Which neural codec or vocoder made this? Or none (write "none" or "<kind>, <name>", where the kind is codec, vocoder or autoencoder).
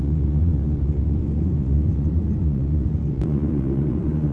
vocoder, Vocos